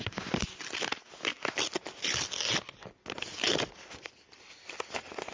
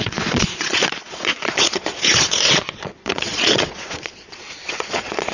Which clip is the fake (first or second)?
second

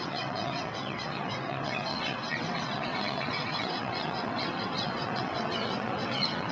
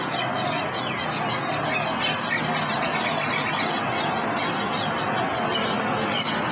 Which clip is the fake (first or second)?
first